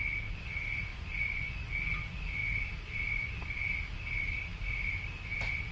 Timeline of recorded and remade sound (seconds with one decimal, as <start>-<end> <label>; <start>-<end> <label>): 0.0-0.9 recorded; 0.9-1.7 remade; 1.7-5.7 recorded